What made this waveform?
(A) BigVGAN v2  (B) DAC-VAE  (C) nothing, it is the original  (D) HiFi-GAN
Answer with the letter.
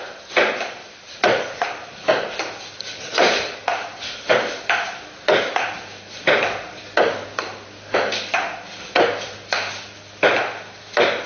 C